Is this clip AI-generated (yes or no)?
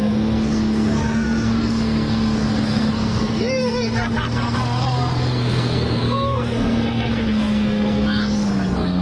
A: yes